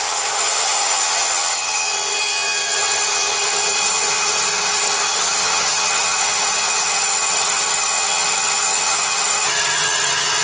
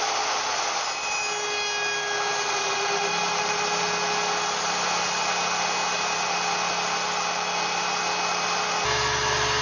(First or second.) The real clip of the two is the second